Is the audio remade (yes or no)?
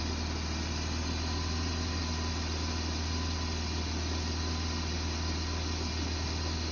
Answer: no